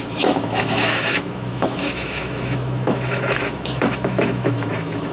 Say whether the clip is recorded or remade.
remade